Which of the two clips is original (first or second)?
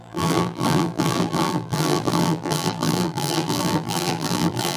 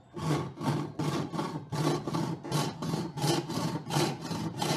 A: second